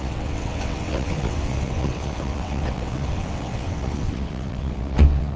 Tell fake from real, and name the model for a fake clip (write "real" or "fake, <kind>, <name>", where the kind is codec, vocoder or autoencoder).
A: fake, vocoder, WaveNeXt